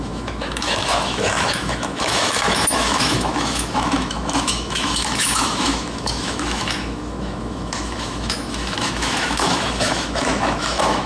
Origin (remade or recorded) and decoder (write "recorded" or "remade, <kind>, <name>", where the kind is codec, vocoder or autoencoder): remade, autoencoder, DAC-VAE